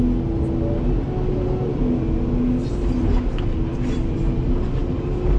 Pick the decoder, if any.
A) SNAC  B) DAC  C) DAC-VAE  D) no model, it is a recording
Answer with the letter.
D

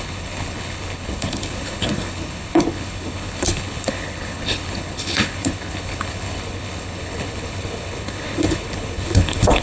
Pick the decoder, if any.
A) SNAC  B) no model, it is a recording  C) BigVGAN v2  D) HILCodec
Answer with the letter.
D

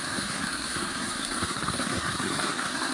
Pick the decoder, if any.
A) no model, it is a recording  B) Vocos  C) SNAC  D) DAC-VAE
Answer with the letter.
C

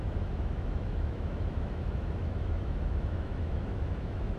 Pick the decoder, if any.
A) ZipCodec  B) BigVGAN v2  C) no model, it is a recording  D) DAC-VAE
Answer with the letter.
D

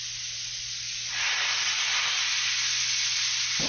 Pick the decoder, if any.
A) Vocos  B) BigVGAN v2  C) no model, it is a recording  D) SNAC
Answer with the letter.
C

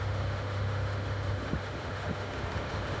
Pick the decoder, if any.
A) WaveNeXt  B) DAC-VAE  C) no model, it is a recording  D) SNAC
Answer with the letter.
B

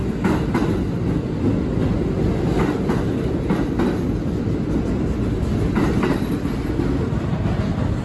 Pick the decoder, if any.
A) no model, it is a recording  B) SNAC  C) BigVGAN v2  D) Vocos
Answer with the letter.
A